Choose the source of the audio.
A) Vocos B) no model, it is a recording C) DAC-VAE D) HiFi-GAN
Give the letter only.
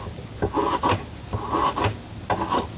B